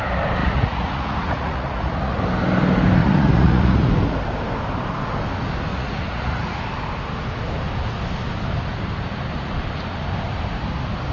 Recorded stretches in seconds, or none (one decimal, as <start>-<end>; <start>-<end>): 0.0-0.4; 2.2-3.0; 3.9-5.7; 6.6-11.1